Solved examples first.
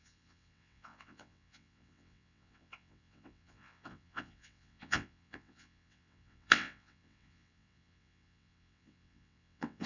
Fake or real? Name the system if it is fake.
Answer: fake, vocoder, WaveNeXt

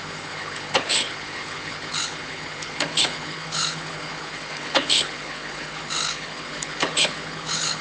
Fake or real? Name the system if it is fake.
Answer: fake, codec, HILCodec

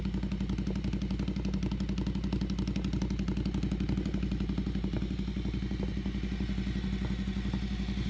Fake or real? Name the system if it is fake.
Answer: real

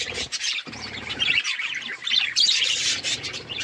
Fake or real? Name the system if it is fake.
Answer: fake, vocoder, BigVGAN v2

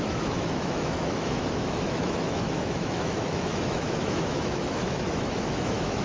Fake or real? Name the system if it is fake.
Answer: fake, autoencoder, DAC-VAE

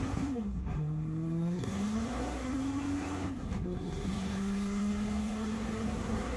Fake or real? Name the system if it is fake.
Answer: fake, codec, SNAC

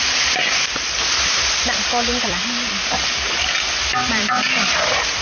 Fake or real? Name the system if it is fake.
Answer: fake, vocoder, BigVGAN v2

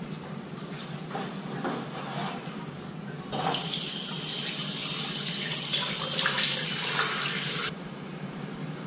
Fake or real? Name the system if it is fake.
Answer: real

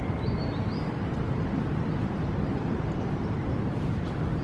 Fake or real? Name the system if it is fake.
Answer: real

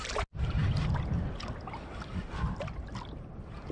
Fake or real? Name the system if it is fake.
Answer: real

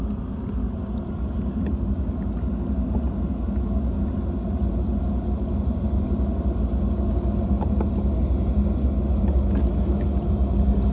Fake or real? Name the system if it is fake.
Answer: real